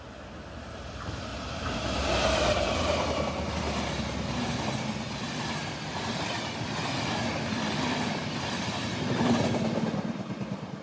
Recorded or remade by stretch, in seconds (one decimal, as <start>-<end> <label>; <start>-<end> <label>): 0.0-1.3 recorded; 1.3-2.7 remade; 2.7-8.2 recorded; 8.2-8.8 remade; 8.8-10.8 recorded